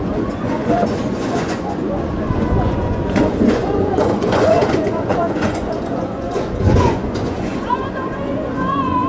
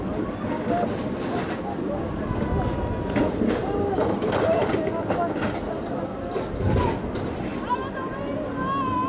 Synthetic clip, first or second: first